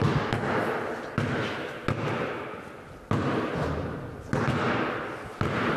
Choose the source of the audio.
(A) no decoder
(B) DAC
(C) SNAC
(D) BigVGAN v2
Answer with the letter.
A